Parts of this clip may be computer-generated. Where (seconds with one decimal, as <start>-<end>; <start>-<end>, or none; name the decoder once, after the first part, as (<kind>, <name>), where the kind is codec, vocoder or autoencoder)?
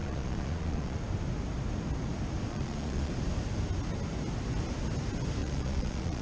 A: 0.0-1.0 (vocoder, Vocos); 2.5-3.1; 5.4-6.2